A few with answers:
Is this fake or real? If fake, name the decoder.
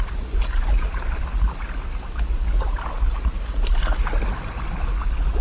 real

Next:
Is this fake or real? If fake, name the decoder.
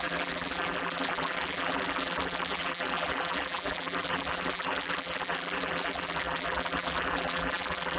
fake, vocoder, BigVGAN v2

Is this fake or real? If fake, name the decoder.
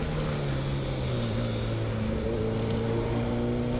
real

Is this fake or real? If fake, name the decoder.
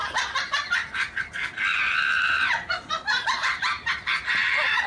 fake, vocoder, BigVGAN v2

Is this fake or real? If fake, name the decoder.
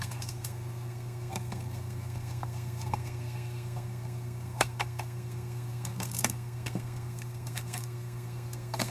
fake, codec, SNAC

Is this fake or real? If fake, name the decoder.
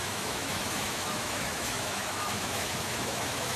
fake, autoencoder, DAC-VAE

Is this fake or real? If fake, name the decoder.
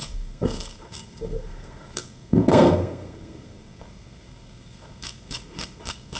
fake, codec, SNAC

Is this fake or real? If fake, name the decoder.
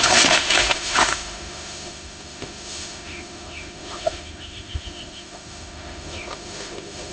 fake, autoencoder, DAC-VAE